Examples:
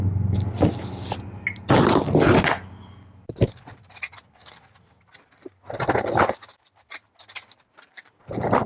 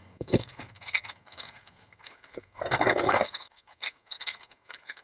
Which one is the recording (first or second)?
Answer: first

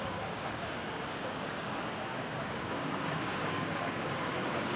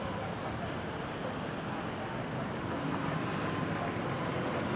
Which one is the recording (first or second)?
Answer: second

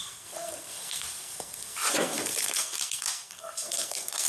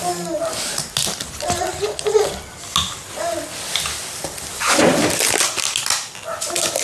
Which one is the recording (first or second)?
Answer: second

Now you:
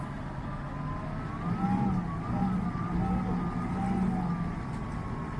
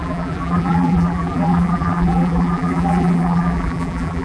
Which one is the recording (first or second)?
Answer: first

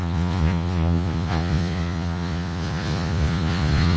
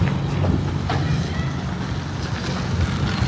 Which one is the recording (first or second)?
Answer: second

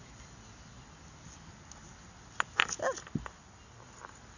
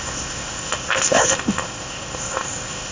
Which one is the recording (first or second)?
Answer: first